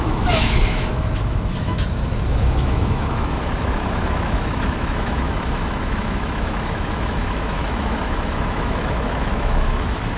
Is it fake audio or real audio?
fake